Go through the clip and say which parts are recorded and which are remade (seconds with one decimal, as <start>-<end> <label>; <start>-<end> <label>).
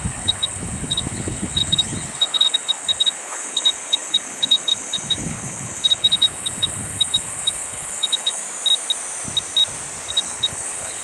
0.0-8.4 remade; 8.4-10.1 recorded; 10.1-11.0 remade